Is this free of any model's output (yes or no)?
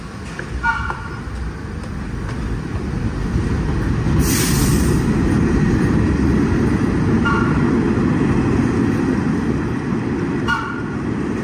yes